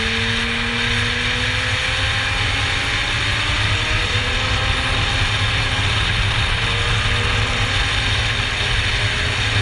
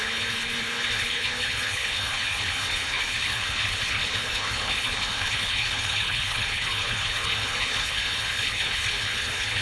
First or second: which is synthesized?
second